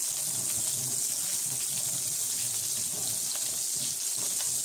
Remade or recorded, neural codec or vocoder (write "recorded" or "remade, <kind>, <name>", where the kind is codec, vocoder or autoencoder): recorded